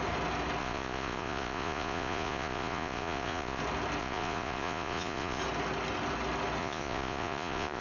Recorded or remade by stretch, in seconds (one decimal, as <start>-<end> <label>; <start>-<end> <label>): 0.0-0.6 recorded; 0.6-3.6 remade; 3.6-4.0 recorded; 4.0-5.4 remade; 5.4-6.6 recorded; 6.6-7.8 remade